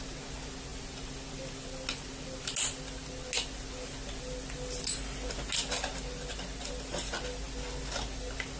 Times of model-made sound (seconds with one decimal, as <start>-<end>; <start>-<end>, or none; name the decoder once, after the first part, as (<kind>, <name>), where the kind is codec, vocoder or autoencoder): none